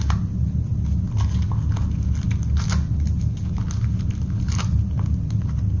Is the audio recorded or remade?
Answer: recorded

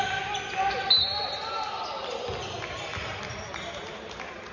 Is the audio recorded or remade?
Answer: recorded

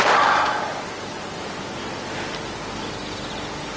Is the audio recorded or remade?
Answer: recorded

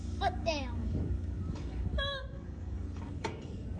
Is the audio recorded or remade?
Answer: remade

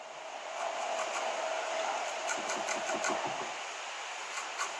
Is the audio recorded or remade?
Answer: recorded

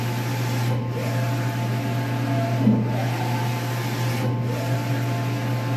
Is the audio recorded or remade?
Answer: recorded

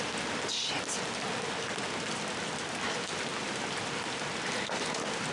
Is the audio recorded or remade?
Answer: recorded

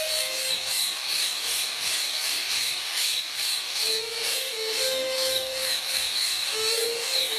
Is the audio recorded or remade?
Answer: remade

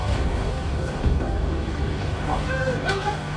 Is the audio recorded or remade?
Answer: remade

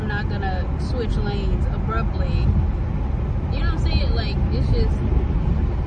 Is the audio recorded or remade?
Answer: recorded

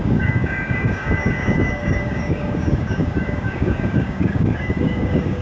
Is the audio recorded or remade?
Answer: remade